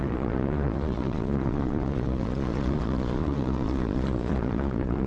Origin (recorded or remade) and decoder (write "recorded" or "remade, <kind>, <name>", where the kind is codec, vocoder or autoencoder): remade, vocoder, Vocos